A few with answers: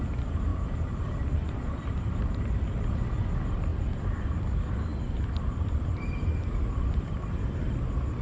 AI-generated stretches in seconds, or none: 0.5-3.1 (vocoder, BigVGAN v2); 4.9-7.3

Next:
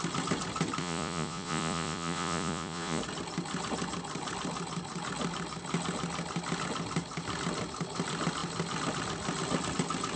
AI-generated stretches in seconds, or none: 0.8-3.0 (vocoder, Vocos)

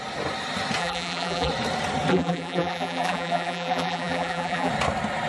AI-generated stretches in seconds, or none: 0.8-1.5 (vocoder, BigVGAN v2); 2.1-4.7

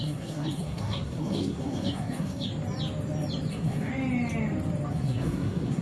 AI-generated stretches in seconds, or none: 0.0-2.5 (codec, SNAC); 3.5-3.9; 4.9-5.8

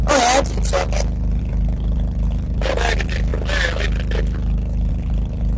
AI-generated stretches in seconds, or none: 1.4-3.3 (vocoder, BigVGAN v2); 4.9-5.6

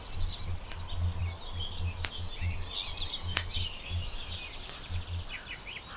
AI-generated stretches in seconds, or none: none

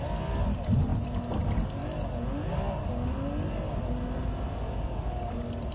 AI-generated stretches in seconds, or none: none